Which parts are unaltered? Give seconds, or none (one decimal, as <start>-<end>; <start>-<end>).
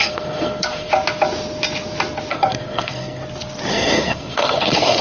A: 0.9-2.3; 3.2-3.7